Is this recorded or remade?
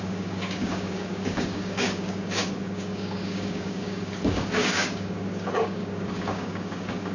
remade